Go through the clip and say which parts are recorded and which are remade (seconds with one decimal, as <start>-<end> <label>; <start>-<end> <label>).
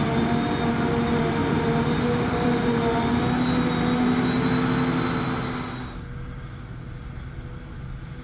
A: 0.0-1.4 recorded; 1.4-3.2 remade; 3.2-8.2 recorded